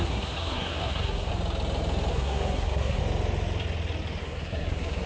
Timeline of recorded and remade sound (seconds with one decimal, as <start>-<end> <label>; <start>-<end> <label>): 0.0-1.3 remade; 1.3-2.1 recorded; 2.1-3.0 remade; 3.0-4.2 recorded; 4.2-5.1 remade